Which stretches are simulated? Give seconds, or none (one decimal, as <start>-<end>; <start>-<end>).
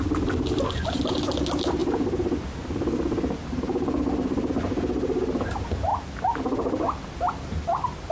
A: none